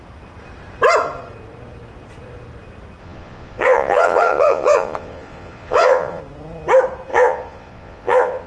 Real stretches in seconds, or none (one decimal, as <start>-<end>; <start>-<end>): 0.0-3.0; 6.2-7.1